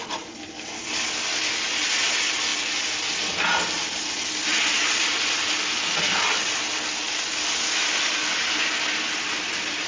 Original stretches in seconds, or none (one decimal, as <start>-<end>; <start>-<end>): 0.0-9.9